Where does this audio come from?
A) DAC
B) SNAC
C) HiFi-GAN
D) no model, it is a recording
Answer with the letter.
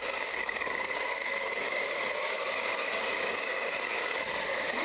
A